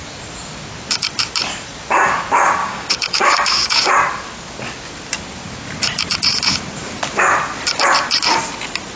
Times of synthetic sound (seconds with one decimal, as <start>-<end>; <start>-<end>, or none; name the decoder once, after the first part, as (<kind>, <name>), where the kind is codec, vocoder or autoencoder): 2.6-3.9 (codec, DAC)